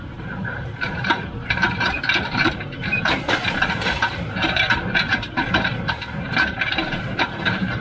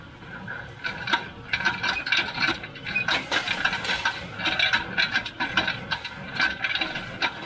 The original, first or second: second